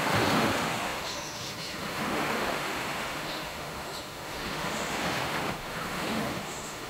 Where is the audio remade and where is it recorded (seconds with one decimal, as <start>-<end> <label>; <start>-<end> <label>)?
0.0-6.9 remade